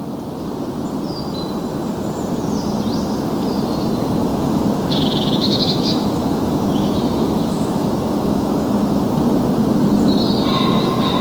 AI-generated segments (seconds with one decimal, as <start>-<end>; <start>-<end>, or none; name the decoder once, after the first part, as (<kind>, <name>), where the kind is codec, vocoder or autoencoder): 4.3-9.0 (autoencoder, DAC-VAE)